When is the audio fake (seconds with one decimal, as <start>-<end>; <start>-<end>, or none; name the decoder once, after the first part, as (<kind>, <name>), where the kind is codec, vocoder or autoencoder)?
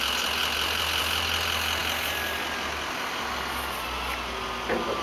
none